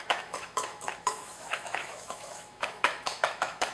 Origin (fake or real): fake